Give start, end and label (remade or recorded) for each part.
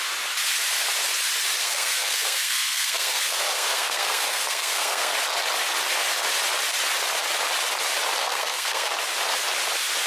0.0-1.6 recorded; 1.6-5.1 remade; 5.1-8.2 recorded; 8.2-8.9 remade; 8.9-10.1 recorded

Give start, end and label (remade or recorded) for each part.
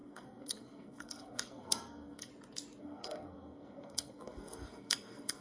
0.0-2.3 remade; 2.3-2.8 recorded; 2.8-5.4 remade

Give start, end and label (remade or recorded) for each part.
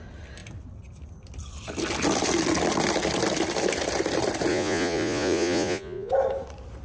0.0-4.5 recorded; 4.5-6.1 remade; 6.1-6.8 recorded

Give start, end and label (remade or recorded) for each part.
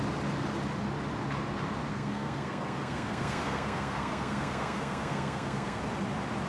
0.0-1.9 recorded; 1.9-5.8 remade; 5.8-6.5 recorded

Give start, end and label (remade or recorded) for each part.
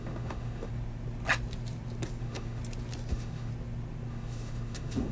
0.0-0.7 remade; 0.7-2.2 recorded; 2.2-2.6 remade; 2.6-3.1 recorded; 3.1-3.5 remade; 3.5-4.1 recorded; 4.1-5.1 remade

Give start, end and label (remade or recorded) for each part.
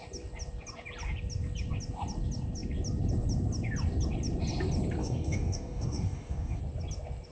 0.0-5.0 recorded; 5.0-6.6 remade; 6.6-7.3 recorded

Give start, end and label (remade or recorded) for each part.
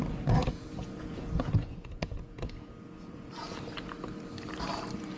0.0-0.4 recorded; 0.4-3.5 remade; 3.5-5.2 recorded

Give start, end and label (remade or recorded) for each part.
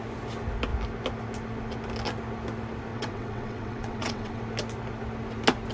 0.0-2.9 recorded; 2.9-4.4 remade; 4.4-5.7 recorded